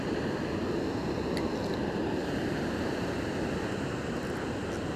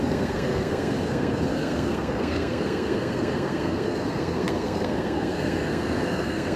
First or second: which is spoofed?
second